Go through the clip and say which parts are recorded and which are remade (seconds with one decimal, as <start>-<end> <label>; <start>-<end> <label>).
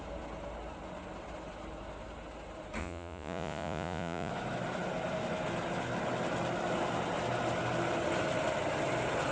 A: 0.0-2.8 recorded; 2.8-4.3 remade; 4.3-9.3 recorded